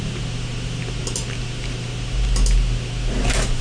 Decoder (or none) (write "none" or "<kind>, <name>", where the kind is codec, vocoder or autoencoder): none